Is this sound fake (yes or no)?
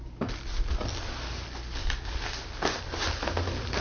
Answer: no